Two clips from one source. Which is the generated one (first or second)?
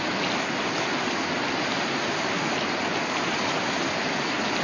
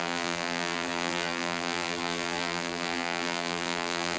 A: second